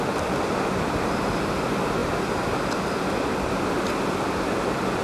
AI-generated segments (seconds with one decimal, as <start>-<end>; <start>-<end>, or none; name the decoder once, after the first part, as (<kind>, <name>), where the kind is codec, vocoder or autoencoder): none